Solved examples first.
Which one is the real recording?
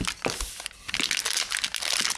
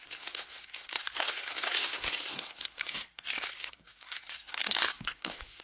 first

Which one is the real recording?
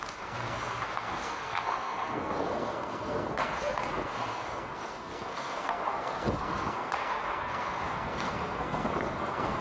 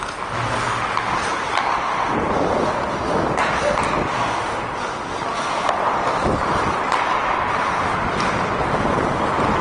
second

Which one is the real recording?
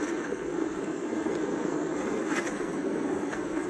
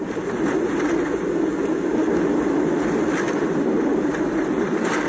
second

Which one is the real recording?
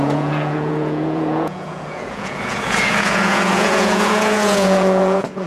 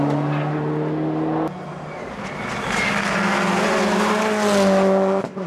second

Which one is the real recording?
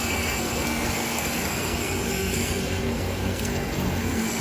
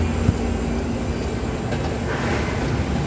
second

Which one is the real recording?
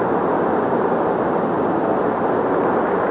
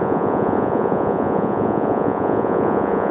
first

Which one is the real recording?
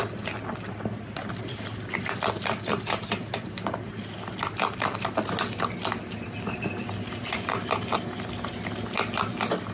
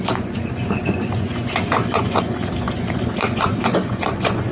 first